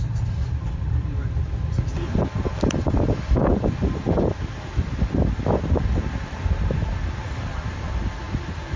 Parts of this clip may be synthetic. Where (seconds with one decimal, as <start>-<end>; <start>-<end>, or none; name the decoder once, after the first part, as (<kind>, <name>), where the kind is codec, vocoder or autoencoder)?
0.0-3.8 (vocoder, BigVGAN v2); 4.5-8.8